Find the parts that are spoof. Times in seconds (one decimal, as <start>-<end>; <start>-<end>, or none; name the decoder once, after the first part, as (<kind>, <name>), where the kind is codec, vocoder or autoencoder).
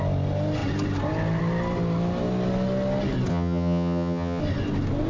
3.3-4.4 (vocoder, HiFi-GAN)